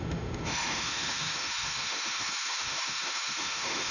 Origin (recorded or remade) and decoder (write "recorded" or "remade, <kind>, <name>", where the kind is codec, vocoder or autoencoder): remade, autoencoder, DAC-VAE